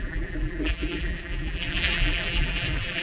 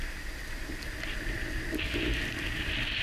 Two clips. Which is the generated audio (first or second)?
first